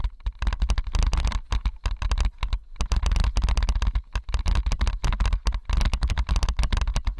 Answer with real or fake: real